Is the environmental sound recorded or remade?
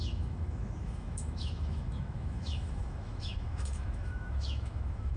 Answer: remade